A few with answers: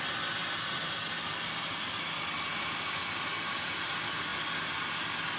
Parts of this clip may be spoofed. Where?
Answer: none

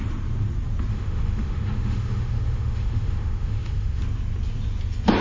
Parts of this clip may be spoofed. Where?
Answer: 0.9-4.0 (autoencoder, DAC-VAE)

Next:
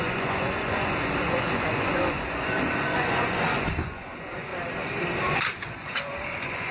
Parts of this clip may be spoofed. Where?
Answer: 0.0-4.5 (vocoder, Vocos); 5.2-6.7

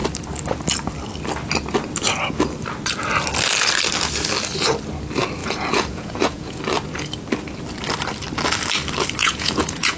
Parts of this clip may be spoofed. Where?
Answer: 5.4-6.6 (vocoder, Vocos); 9.2-10.0

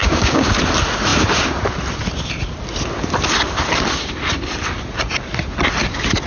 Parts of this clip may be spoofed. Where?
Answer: 0.0-0.5 (codec, DAC)

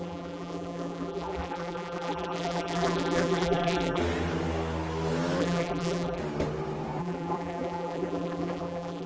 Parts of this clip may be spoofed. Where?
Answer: 0.0-4.0 (vocoder, BigVGAN v2); 5.4-6.2; 7.0-9.1

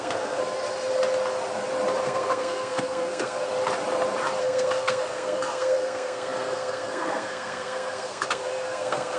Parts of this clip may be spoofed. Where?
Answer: 0.0-0.4 (codec, SNAC); 2.0-3.5; 4.4-9.2

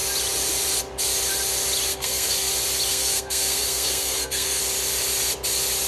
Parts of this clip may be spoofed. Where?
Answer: 1.9-2.5 (codec, SNAC); 2.9-4.6